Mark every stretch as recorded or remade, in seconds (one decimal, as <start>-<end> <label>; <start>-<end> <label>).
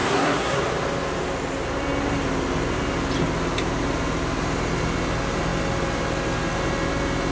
0.0-0.6 remade; 0.6-7.3 recorded